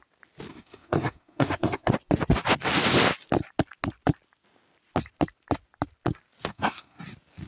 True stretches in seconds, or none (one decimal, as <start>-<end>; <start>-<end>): 0.0-0.5; 1.9-6.5; 7.0-7.5